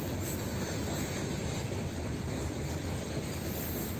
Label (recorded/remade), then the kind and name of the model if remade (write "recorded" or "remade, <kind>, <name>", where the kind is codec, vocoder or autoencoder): recorded